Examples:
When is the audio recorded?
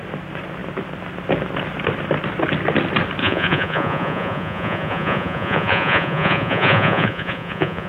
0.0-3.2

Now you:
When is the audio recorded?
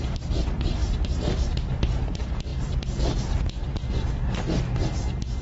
0.0-5.4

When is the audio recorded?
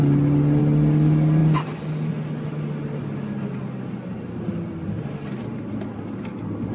0.0-6.7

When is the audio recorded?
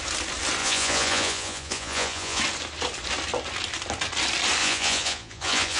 0.0-0.6; 2.4-4.6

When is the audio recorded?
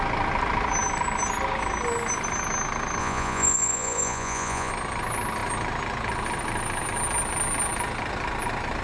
0.0-3.0; 4.7-8.8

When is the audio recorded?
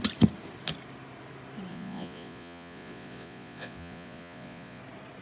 0.0-1.7; 4.8-5.2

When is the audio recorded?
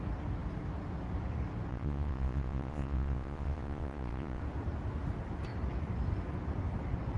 0.0-1.7; 4.4-7.2